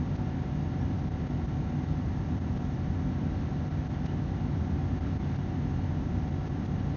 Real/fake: real